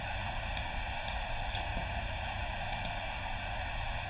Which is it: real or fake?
fake